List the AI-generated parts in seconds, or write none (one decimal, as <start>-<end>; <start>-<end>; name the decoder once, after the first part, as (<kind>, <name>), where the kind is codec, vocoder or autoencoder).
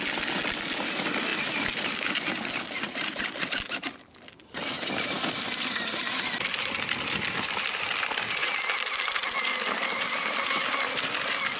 1.3-3.5 (vocoder, BigVGAN v2)